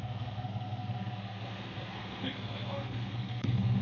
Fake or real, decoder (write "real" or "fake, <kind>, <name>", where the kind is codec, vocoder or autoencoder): fake, codec, SNAC